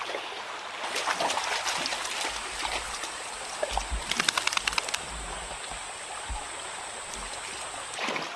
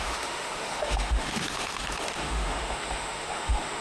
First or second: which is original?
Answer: first